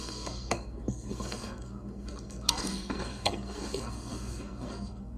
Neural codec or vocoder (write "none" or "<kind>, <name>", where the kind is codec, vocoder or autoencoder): codec, SNAC